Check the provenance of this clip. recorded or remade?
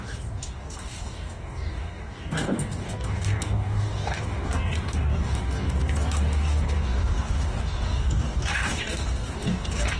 remade